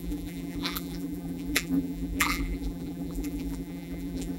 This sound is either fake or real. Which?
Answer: fake